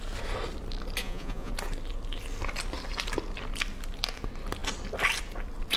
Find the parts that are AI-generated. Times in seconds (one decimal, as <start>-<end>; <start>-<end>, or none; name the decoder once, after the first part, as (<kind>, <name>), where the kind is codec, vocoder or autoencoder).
1.0-1.5 (vocoder, Vocos)